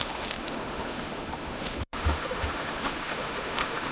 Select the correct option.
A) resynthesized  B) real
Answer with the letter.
A